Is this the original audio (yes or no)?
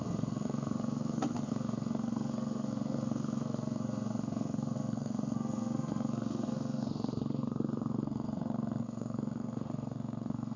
no